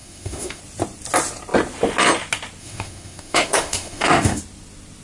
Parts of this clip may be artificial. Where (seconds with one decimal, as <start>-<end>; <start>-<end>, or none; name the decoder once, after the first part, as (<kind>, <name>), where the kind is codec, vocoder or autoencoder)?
0.0-0.6 (autoencoder, DAC-VAE); 2.6-4.4